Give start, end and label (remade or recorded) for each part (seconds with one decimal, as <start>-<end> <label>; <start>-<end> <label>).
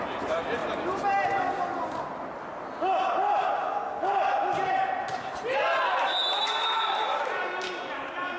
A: 0.0-6.2 recorded; 6.2-7.4 remade; 7.4-8.4 recorded